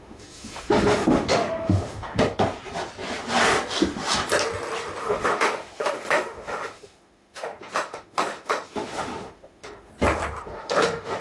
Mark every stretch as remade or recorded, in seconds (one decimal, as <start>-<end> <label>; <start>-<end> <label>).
0.0-2.2 remade; 2.2-5.0 recorded; 5.0-9.9 remade; 9.9-10.4 recorded; 10.4-11.2 remade